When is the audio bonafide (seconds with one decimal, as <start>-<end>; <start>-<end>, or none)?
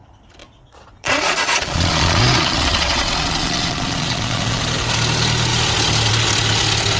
0.0-0.4; 4.6-7.0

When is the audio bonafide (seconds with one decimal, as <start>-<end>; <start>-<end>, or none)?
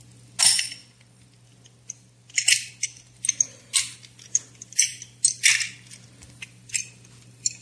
0.0-7.6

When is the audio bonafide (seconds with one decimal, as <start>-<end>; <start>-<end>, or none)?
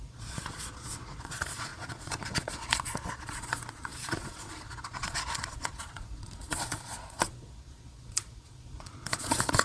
none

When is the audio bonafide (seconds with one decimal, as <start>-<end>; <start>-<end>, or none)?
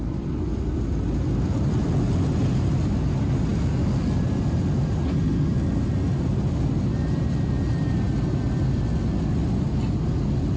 0.0-10.6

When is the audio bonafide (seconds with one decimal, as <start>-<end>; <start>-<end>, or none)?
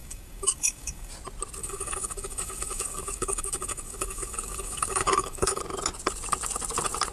1.1-1.6; 5.6-7.1